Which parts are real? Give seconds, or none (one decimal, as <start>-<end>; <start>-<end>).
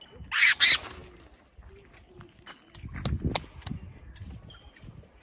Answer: 0.0-5.2